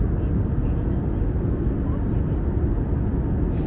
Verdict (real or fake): real